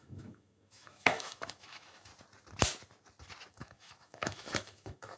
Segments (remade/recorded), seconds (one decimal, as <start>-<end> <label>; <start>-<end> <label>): 0.0-2.1 remade; 2.1-3.5 recorded; 3.5-5.2 remade

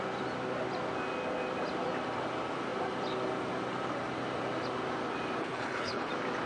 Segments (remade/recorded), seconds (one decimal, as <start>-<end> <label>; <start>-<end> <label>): 0.0-5.4 recorded; 5.4-6.1 remade; 6.1-6.5 recorded

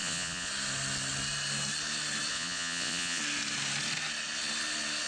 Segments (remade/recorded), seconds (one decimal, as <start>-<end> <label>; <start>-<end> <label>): 0.0-0.5 remade; 0.5-2.3 recorded; 2.3-3.2 remade; 3.2-5.1 recorded